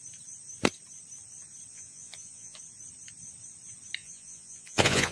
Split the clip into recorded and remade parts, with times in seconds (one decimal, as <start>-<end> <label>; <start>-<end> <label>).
0.0-1.7 recorded; 1.7-2.6 remade; 2.6-4.0 recorded; 4.0-5.1 remade